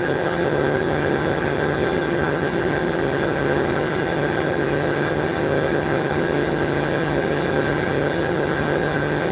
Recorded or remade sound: remade